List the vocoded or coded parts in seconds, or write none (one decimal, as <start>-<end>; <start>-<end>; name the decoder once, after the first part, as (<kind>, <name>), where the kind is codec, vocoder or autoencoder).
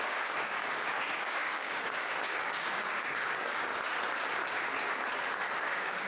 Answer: 0.0-3.7 (codec, DAC); 5.6-6.1